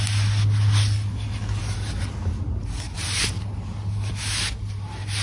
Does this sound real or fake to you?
real